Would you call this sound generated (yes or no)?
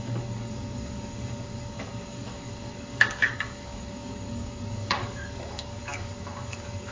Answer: yes